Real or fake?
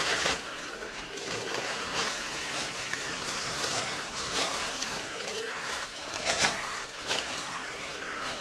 fake